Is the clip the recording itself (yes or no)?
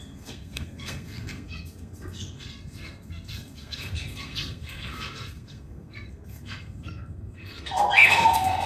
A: no